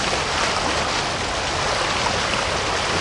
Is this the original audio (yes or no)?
yes